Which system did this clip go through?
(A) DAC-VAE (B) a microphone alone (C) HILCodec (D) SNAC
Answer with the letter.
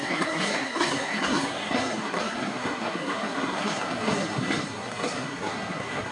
D